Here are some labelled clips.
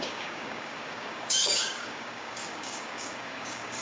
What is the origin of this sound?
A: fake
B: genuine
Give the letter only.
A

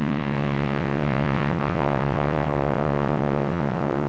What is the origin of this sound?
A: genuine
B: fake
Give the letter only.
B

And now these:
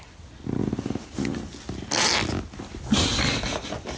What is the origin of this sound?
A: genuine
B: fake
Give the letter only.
A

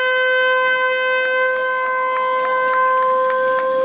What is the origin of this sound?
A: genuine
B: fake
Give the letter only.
A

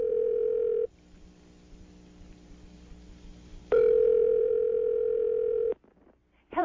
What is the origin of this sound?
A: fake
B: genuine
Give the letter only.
A